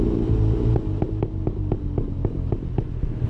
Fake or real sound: real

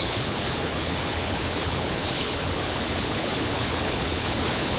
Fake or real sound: fake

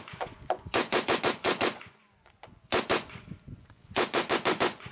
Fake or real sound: fake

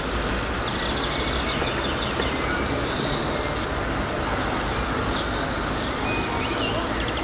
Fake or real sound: real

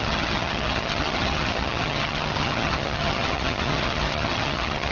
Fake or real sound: fake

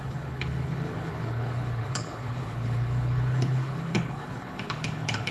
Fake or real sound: fake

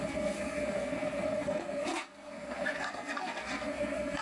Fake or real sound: fake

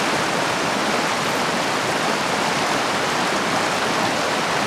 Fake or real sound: real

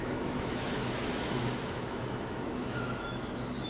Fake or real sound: fake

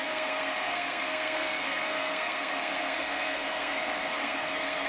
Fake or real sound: fake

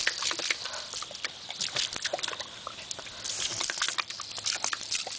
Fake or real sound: real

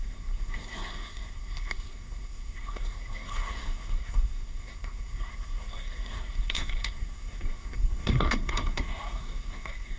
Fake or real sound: fake